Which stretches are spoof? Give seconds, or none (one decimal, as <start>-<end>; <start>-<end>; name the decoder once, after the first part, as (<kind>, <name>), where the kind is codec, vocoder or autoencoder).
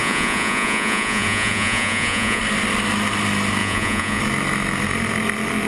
0.0-2.4 (vocoder, Vocos); 3.6-4.2